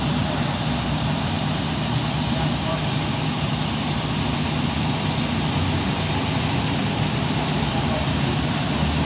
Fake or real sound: real